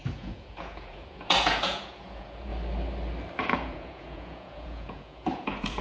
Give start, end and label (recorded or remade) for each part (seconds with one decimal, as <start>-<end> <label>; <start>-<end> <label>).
0.0-2.5 remade; 2.5-3.4 recorded; 3.4-5.8 remade